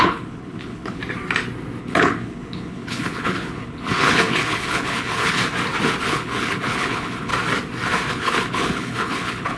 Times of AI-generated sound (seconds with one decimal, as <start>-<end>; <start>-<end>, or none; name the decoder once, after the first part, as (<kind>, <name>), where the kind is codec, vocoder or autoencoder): 0.0-1.0 (codec, HILCodec); 1.8-5.4; 6.0-7.3; 8.1-9.6